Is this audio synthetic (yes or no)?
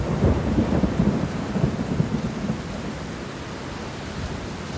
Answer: no